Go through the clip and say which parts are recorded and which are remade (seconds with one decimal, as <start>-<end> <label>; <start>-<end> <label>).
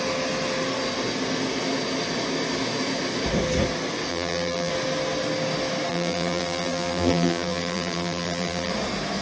0.0-4.1 recorded; 4.1-4.7 remade; 4.7-5.9 recorded; 5.9-8.7 remade; 8.7-9.2 recorded